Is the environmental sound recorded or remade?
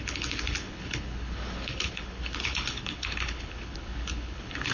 remade